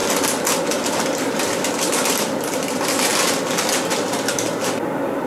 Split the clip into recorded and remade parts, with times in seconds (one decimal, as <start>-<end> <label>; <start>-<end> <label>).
0.0-1.2 recorded; 1.2-3.1 remade; 3.1-3.8 recorded; 3.8-5.3 remade

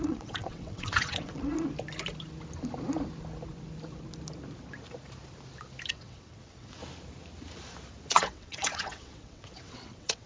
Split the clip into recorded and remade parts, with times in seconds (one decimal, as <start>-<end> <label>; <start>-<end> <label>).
0.0-1.5 remade; 1.5-5.9 recorded; 5.9-6.8 remade; 6.8-8.1 recorded; 8.1-10.3 remade